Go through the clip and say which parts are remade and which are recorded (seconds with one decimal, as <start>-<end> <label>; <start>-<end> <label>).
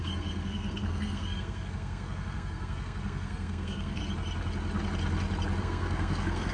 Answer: 0.0-4.0 remade; 4.0-5.6 recorded; 5.6-6.5 remade